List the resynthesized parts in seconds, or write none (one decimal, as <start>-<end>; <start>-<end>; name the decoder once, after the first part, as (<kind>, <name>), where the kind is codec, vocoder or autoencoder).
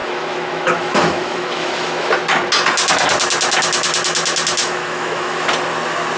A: 0.0-2.1 (autoencoder, DAC-VAE); 4.6-5.5